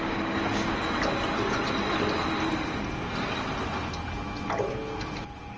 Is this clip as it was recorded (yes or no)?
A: yes